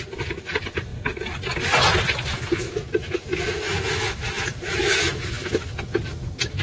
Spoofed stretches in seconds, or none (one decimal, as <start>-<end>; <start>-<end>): 2.3-6.6